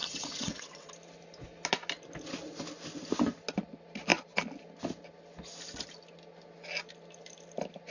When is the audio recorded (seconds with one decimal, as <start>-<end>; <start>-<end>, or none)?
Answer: 0.9-7.9